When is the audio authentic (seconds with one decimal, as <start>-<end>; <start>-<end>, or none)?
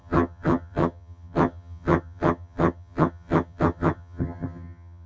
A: none